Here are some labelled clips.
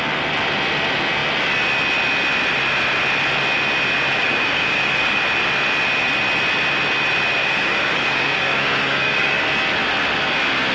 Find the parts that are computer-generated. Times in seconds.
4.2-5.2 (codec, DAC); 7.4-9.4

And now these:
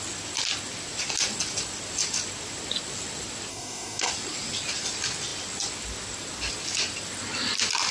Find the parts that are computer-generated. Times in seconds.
3.5-4.1 (codec, DAC)

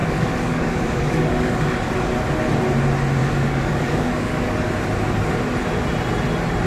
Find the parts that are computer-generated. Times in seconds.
0.0-1.9 (codec, DAC); 3.2-4.7

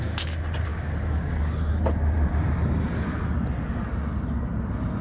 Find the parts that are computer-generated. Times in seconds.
none

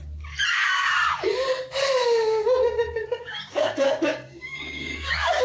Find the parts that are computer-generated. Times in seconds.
2.0-5.4 (codec, DAC)

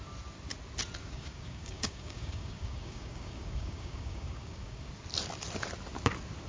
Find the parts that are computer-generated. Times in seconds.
1.0-4.9 (codec, DAC)

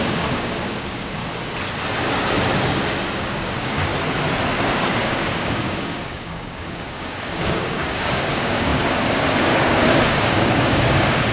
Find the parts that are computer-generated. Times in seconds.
0.0-1.2 (codec, DAC); 3.2-3.9; 4.6-11.3